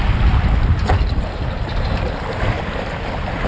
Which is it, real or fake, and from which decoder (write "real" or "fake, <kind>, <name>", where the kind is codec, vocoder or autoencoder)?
real